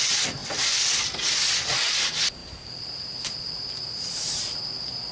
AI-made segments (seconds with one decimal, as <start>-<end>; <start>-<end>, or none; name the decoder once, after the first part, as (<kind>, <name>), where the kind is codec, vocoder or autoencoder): 2.4-5.1 (vocoder, BigVGAN v2)